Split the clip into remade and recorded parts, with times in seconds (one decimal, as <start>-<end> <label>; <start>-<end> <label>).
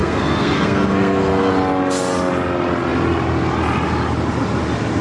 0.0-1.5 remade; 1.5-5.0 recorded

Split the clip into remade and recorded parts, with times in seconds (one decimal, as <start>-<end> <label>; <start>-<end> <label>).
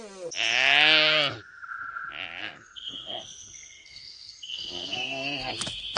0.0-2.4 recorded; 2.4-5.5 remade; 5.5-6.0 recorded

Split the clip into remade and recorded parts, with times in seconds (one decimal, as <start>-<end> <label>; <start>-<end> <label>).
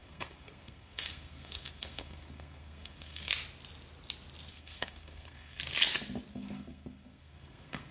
0.0-3.3 remade; 3.3-4.5 recorded; 4.5-5.6 remade; 5.6-6.3 recorded; 6.3-7.9 remade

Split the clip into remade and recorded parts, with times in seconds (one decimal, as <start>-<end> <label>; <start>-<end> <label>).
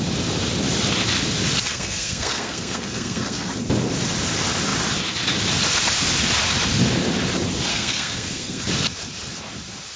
0.0-1.7 recorded; 1.7-3.5 remade; 3.5-7.7 recorded; 7.7-8.6 remade; 8.6-10.0 recorded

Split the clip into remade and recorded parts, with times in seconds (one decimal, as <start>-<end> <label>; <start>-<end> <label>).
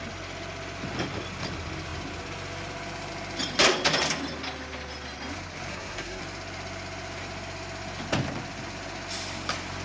0.0-5.7 recorded; 5.7-6.2 remade; 6.2-9.8 recorded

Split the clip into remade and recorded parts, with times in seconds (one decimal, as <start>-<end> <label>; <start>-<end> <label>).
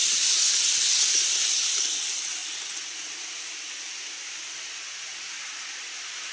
0.0-6.3 recorded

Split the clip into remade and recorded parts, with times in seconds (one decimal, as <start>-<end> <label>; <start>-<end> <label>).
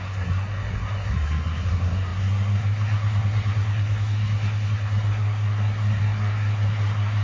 0.0-7.2 remade